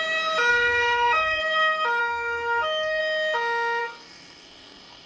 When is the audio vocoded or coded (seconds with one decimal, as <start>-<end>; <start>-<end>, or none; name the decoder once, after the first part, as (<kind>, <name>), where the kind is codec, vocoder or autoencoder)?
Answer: 0.5-1.4 (codec, SNAC); 2.0-3.0; 3.8-5.1